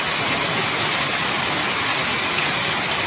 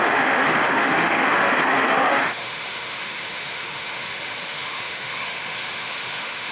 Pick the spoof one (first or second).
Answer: second